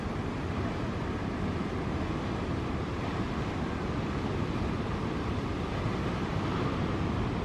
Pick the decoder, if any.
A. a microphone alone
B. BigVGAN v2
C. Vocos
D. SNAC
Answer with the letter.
A